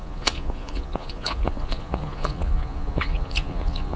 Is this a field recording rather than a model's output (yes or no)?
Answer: no